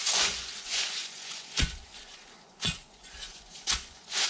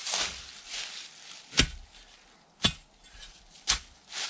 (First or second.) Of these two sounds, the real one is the second